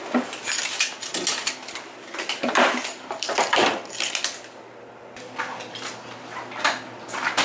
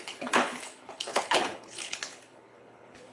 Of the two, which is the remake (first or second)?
second